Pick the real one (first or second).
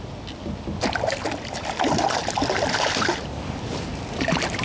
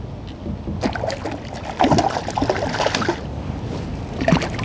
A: second